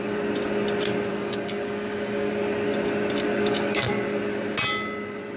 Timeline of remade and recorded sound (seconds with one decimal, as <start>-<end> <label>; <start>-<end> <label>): 0.0-1.1 recorded; 1.1-2.3 remade; 2.3-3.3 recorded; 3.3-3.9 remade; 3.9-5.4 recorded